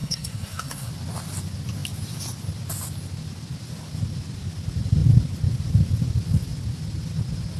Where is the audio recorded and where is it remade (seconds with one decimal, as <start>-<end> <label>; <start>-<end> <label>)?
0.0-0.9 remade; 0.9-7.6 recorded